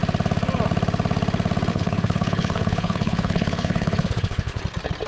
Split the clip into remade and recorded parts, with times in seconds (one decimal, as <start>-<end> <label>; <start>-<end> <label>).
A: 0.0-1.7 recorded; 1.7-4.6 remade; 4.6-5.1 recorded